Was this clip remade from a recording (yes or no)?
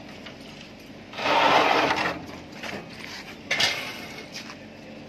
no